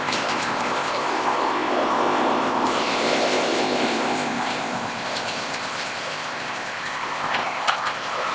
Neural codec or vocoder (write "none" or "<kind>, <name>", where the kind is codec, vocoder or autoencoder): codec, ZipCodec